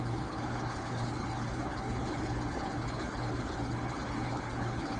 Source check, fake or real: fake